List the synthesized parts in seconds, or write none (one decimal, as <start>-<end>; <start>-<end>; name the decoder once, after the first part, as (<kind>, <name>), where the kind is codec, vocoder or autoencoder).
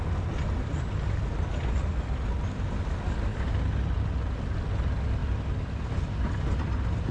none